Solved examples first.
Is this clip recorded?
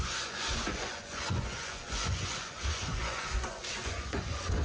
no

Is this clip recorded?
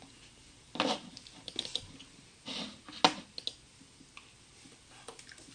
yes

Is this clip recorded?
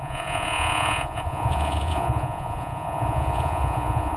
no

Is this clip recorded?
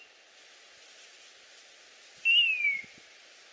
yes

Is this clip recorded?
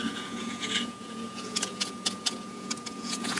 no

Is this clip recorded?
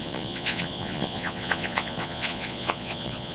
no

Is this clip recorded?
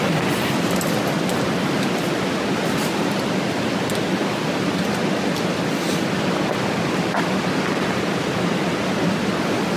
yes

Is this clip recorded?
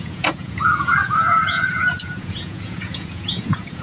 no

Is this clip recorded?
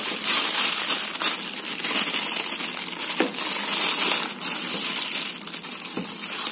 yes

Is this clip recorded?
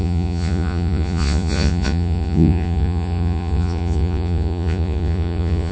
no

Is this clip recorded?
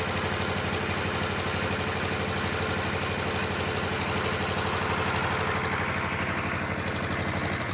yes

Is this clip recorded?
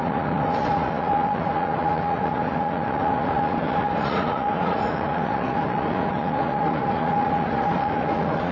no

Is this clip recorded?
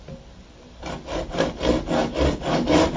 yes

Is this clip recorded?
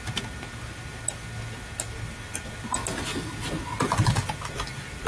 yes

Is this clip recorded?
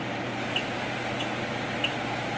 yes